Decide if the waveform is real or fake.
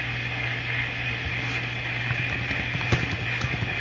real